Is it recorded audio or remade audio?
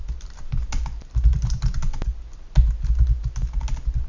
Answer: recorded